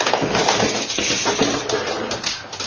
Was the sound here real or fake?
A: real